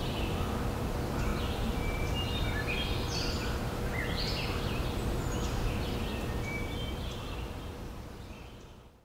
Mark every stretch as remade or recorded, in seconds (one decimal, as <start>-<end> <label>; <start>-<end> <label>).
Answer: 0.0-9.0 recorded